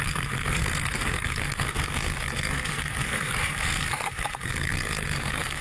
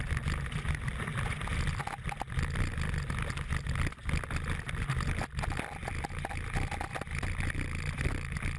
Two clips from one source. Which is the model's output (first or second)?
first